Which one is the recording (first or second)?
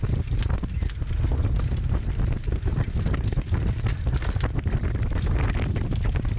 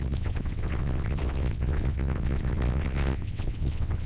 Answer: first